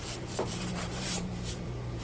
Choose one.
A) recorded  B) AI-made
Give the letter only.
B